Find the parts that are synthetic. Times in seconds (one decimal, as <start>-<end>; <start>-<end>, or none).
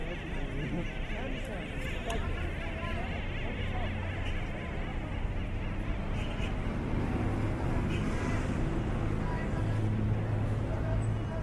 none